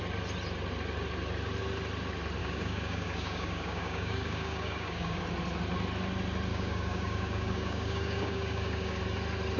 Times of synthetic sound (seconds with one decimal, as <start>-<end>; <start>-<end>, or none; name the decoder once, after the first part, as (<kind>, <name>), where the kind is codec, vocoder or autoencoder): 2.4-5.2 (codec, DAC); 6.5-9.0